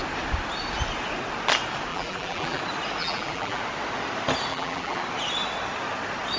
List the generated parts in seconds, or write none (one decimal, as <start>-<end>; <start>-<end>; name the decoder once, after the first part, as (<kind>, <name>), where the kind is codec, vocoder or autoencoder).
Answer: 1.9-2.6 (vocoder, BigVGAN v2); 3.0-3.6; 4.5-5.0